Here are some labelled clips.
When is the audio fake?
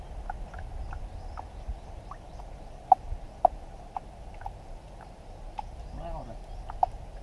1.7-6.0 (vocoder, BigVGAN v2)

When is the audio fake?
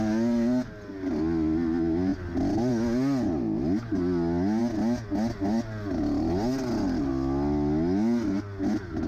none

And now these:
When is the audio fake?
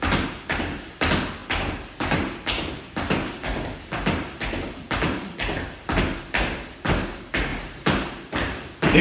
none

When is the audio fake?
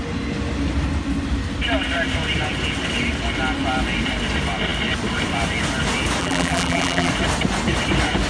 6.2-7.1 (vocoder, BigVGAN v2)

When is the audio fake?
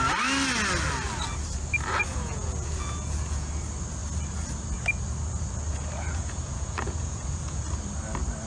2.1-3.5 (vocoder, Vocos); 5.7-7.6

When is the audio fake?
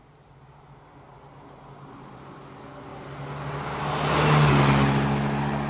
none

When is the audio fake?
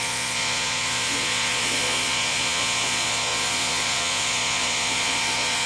0.0-5.7 (vocoder, Vocos)